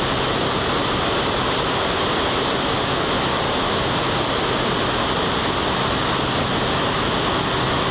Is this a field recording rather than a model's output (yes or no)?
yes